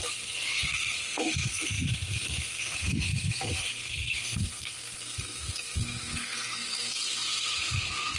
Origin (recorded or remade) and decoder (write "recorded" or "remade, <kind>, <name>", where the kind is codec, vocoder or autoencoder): remade, codec, SNAC